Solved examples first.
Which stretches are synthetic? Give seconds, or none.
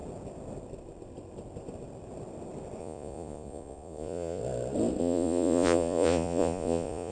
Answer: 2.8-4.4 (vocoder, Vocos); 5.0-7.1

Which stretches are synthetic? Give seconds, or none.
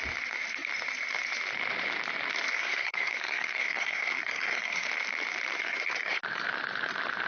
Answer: 2.6-4.9 (codec, SNAC); 5.6-6.2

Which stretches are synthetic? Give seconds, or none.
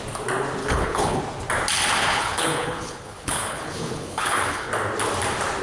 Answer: 0.6-1.2 (codec, HILCodec); 2.1-4.7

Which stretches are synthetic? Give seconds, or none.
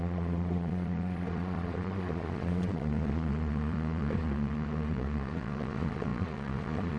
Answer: 0.0-7.0 (vocoder, Vocos)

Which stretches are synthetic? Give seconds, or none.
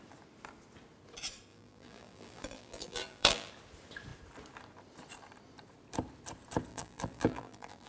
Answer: 1.5-3.5 (vocoder, BigVGAN v2); 6.7-7.9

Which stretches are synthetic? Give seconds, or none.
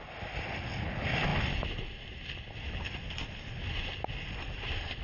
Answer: none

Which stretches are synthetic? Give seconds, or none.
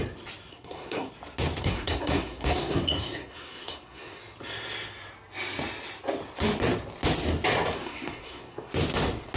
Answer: 0.5-1.1 (codec, SNAC); 1.6-4.2; 7.8-8.7